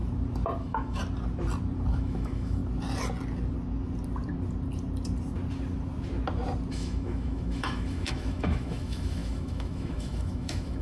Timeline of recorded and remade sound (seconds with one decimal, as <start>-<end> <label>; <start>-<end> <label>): 0.0-0.6 recorded; 0.6-1.0 remade; 1.0-1.9 recorded; 1.9-2.6 remade; 2.6-6.7 recorded; 6.7-10.8 remade